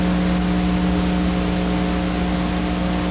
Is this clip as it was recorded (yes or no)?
yes